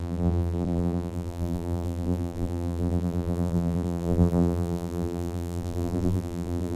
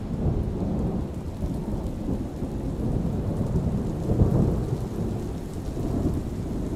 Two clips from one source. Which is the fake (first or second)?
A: first